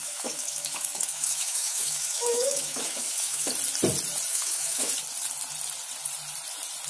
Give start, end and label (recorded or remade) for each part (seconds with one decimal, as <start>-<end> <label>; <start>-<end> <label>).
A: 0.0-3.5 remade; 3.5-4.3 recorded; 4.3-4.9 remade; 4.9-6.9 recorded